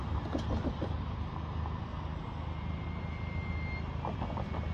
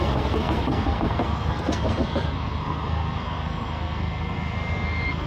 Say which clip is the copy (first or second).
second